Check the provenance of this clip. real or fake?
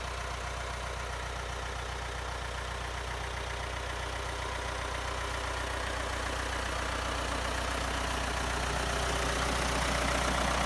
real